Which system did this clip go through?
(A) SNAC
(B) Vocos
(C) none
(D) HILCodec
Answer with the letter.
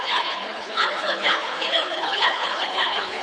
D